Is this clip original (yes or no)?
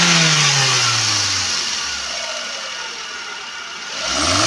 yes